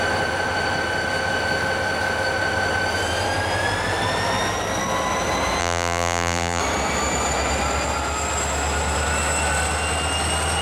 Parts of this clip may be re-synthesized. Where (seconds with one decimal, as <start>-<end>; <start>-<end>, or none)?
5.6-6.6